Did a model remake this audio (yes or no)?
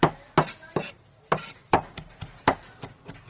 no